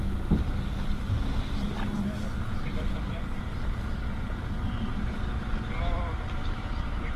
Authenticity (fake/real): fake